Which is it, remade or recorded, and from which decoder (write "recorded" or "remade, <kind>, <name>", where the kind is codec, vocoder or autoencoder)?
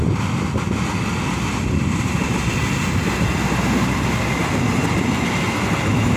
recorded